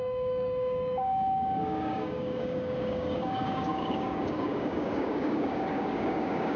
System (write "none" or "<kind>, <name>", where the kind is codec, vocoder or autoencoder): codec, DAC